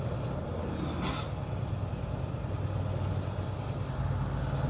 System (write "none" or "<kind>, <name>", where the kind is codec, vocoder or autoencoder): none